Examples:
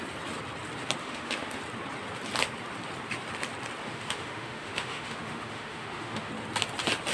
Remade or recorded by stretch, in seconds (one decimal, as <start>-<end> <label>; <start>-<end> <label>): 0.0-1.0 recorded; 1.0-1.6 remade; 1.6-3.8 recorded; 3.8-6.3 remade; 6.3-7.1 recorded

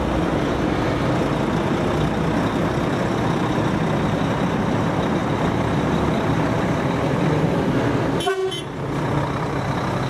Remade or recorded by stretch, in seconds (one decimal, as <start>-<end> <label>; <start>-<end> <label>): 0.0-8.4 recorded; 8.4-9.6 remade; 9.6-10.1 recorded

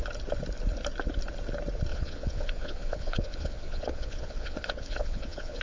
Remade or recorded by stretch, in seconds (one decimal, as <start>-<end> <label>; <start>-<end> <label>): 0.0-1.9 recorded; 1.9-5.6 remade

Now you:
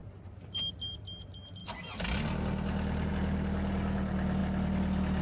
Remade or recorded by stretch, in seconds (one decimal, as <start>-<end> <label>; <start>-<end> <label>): 0.0-5.2 recorded

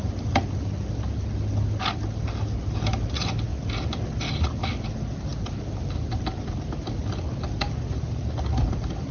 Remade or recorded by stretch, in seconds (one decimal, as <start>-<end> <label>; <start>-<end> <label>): 0.0-9.1 recorded

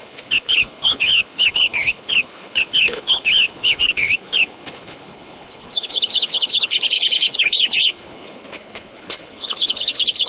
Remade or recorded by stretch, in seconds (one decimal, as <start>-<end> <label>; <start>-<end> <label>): 0.0-10.3 remade

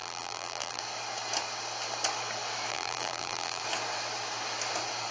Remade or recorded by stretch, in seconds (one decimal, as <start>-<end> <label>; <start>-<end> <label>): 0.0-0.8 remade; 0.8-2.7 recorded; 2.7-3.6 remade; 3.6-5.1 recorded